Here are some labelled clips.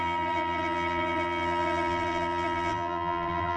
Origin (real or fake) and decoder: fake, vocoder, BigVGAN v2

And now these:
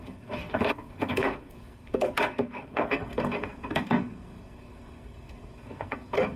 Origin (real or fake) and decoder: fake, codec, SNAC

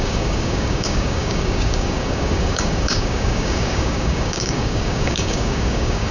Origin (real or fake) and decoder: fake, codec, DAC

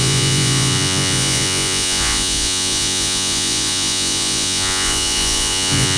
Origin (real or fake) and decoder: fake, vocoder, Vocos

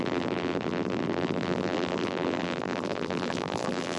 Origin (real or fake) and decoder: fake, vocoder, BigVGAN v2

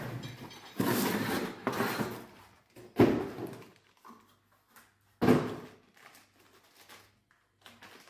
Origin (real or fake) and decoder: real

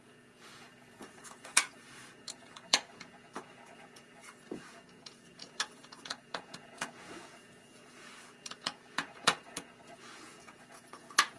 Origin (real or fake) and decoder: fake, vocoder, Vocos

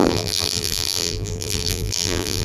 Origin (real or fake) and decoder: fake, vocoder, BigVGAN v2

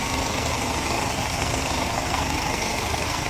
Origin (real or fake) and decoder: fake, codec, SNAC